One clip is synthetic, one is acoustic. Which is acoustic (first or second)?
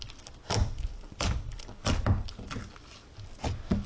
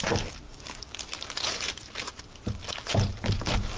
first